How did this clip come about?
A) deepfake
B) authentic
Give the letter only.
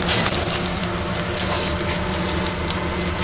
B